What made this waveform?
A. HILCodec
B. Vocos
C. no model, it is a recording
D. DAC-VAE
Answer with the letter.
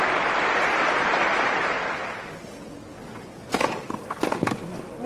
C